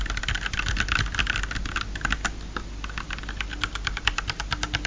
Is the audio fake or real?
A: real